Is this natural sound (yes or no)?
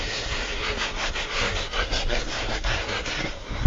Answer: no